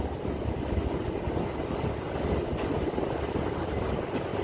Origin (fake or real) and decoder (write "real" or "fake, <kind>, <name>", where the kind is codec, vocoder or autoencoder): real